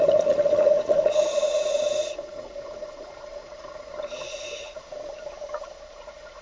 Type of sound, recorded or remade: remade